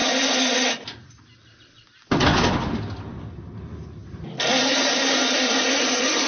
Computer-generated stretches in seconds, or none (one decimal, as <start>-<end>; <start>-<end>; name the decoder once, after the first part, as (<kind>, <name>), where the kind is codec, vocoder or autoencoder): none

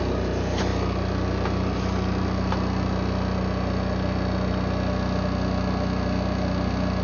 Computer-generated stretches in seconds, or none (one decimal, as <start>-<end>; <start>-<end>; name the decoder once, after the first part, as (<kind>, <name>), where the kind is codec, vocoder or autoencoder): none

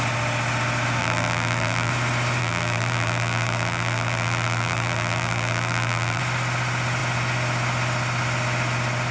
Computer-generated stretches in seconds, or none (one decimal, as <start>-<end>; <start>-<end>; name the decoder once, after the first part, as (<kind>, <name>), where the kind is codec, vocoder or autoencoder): 1.0-1.9 (vocoder, BigVGAN v2); 2.4-6.2